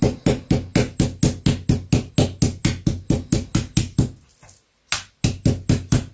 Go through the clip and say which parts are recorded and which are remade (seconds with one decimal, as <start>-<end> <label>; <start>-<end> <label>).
0.0-6.1 recorded